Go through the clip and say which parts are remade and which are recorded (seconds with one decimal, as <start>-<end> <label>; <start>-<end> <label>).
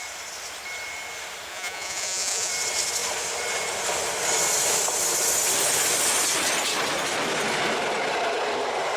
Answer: 0.0-1.5 recorded; 1.5-2.5 remade; 2.5-9.0 recorded